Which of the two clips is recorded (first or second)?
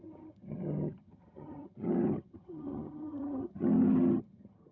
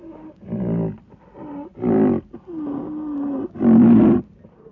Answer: second